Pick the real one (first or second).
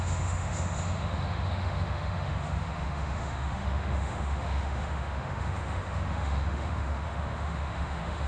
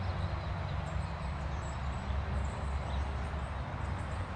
second